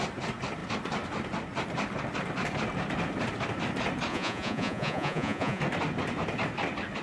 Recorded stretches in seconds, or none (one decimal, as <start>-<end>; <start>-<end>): 0.0-4.1; 5.6-7.0

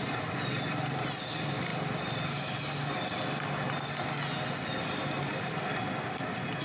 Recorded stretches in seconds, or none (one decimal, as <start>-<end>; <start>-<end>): 0.0-6.6

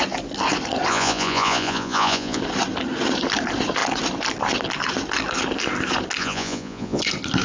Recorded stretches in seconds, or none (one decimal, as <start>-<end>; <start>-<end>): 0.0-0.9; 2.4-6.2; 7.0-7.4

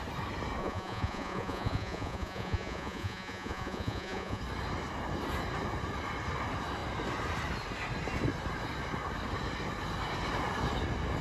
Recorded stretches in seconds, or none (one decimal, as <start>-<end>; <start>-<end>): 0.0-0.6; 4.4-11.2